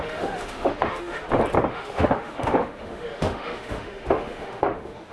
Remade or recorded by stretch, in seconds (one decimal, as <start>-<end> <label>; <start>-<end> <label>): 0.0-1.2 remade; 1.2-1.7 recorded; 1.7-5.1 remade